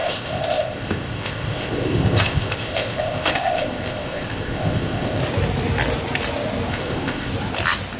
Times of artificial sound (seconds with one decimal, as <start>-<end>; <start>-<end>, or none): 0.0-5.2; 6.7-7.3